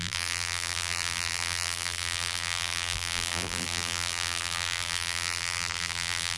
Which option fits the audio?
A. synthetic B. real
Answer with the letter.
A